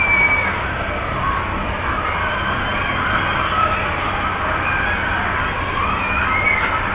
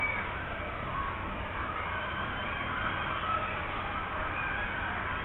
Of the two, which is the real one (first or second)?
first